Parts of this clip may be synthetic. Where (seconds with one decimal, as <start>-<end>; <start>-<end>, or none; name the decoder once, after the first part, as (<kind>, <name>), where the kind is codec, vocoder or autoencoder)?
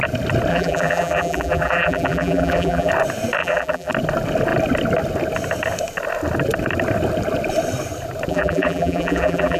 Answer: 0.5-2.9 (vocoder, BigVGAN v2); 3.4-3.9; 8.3-9.6